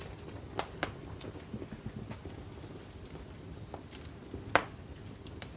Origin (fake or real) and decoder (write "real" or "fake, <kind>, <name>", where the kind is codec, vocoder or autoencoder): real